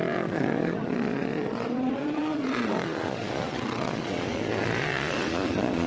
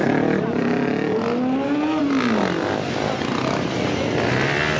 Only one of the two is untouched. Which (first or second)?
second